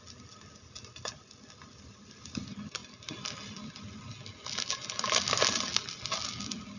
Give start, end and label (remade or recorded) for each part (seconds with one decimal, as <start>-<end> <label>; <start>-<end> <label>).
0.0-6.8 recorded